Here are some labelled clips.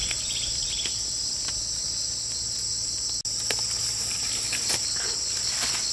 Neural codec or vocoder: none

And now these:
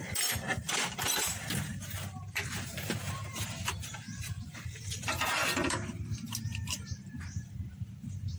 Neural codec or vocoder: vocoder, BigVGAN v2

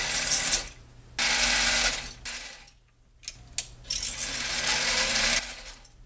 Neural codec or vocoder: none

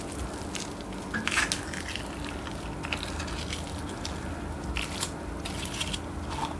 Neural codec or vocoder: none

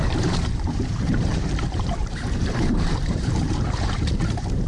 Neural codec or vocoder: vocoder, BigVGAN v2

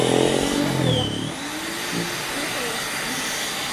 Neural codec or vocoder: none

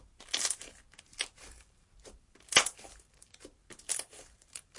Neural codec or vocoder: vocoder, BigVGAN v2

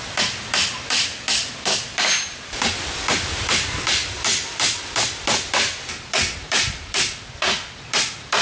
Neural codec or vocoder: vocoder, BigVGAN v2